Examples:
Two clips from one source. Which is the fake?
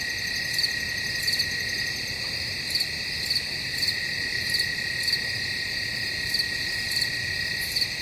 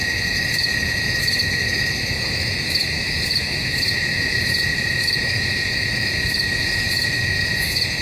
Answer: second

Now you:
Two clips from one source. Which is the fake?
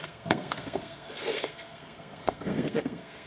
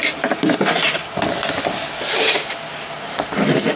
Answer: first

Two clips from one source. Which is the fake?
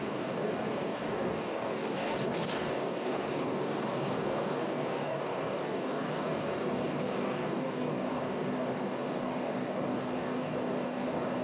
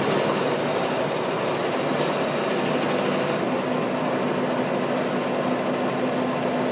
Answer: first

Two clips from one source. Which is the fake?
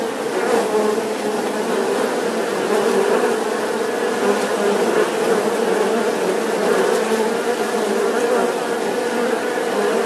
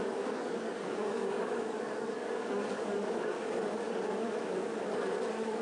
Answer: second